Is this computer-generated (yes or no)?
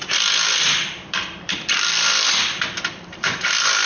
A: yes